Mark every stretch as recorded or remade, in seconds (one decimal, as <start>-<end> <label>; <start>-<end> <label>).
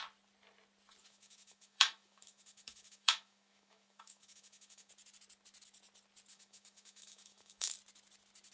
0.0-1.0 recorded; 1.0-4.9 remade; 4.9-6.3 recorded; 6.3-7.7 remade; 7.7-8.5 recorded